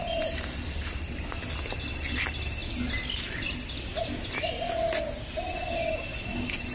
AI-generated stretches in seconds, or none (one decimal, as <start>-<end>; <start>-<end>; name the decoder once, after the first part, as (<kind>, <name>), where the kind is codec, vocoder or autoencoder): none